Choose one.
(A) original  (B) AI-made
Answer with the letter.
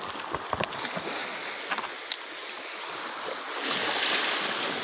A